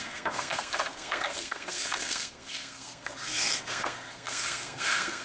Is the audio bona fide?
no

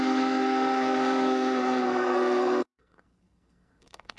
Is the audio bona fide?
no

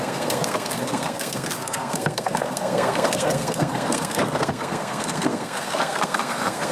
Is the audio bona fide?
no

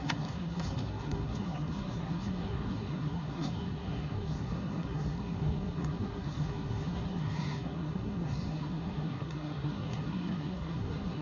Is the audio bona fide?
no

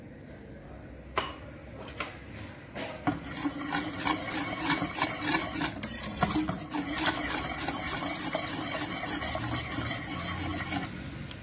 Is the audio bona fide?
yes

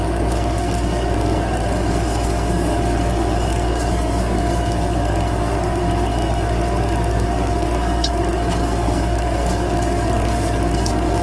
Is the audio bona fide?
no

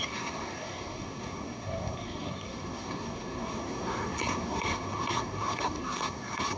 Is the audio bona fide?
no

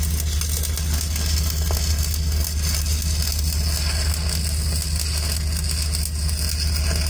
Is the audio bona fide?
yes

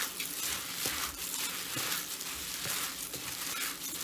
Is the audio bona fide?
yes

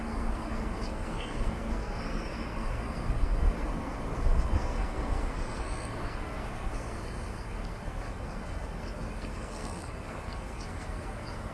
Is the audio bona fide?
no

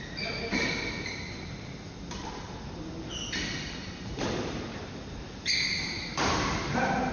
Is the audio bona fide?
yes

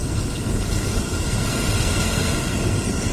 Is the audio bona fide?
no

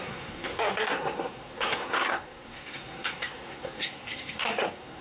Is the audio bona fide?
no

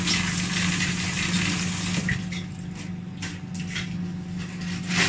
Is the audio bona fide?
yes